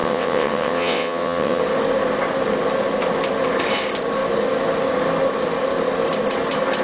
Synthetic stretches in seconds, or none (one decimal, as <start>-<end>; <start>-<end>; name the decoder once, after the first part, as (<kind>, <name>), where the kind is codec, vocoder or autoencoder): 0.0-1.6 (vocoder, WaveNeXt)